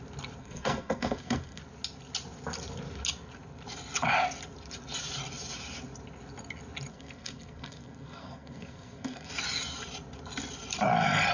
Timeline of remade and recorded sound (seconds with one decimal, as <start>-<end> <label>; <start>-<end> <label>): 0.0-0.4 recorded; 0.4-1.6 remade; 1.6-6.9 recorded; 6.9-9.3 remade; 9.3-11.3 recorded